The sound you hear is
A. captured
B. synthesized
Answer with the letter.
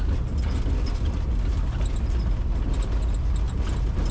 A